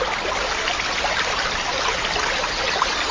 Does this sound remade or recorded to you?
recorded